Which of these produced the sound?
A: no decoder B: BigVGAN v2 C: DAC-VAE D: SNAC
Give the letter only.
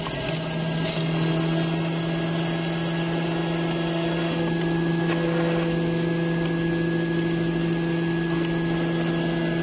A